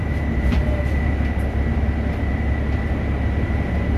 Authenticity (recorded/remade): recorded